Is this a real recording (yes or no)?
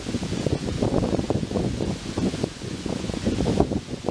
no